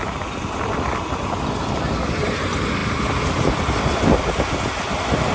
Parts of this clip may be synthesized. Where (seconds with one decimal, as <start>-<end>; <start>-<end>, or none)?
none